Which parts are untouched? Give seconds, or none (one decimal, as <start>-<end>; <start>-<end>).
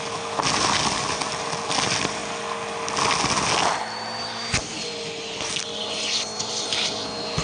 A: 0.0-7.4